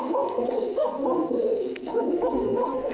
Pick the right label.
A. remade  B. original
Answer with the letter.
A